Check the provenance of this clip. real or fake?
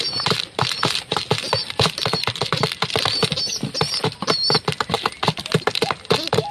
fake